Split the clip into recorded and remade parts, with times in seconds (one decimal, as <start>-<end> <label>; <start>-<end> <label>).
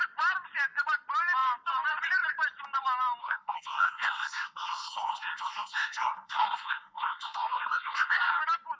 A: 0.0-3.2 recorded; 3.2-8.4 remade; 8.4-8.8 recorded